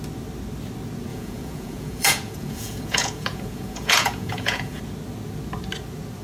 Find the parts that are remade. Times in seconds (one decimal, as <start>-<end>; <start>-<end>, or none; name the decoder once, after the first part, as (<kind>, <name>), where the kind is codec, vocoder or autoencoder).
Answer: 1.1-4.8 (vocoder, Vocos)